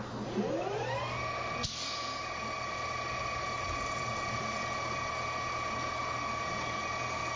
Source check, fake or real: real